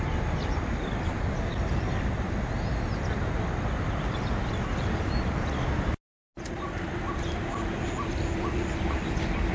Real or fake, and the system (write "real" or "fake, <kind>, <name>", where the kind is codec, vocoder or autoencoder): real